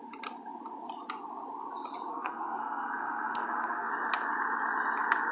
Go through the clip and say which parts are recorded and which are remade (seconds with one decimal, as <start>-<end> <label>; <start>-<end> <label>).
0.0-2.1 recorded; 2.1-3.9 remade; 3.9-5.3 recorded